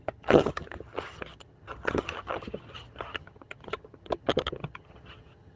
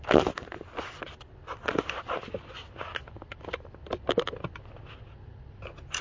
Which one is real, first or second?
second